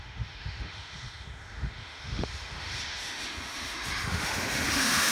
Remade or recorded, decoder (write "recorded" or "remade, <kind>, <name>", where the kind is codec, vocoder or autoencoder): remade, autoencoder, DAC-VAE